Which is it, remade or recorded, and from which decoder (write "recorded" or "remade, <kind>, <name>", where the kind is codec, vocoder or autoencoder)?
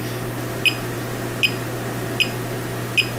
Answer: recorded